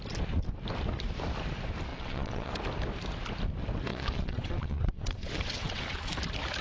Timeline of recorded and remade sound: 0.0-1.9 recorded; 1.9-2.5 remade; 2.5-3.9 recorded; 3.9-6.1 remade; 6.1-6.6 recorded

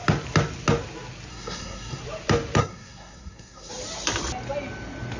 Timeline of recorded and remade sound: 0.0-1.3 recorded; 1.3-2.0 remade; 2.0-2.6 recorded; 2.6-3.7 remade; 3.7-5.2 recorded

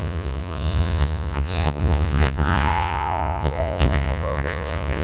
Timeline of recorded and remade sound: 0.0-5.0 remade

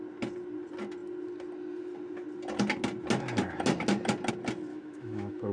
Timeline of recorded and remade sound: 0.0-4.7 recorded; 4.7-5.5 remade

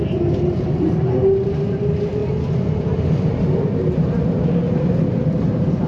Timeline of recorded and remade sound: 0.0-5.9 recorded